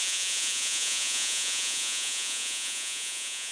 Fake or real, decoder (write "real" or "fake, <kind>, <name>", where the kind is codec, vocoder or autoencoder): fake, vocoder, Vocos